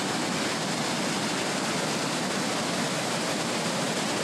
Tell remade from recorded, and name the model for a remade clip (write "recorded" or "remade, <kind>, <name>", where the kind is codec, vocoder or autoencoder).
recorded